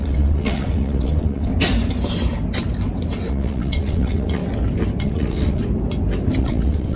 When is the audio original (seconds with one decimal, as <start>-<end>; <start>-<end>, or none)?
1.5-3.3; 4.4-5.0; 5.6-6.4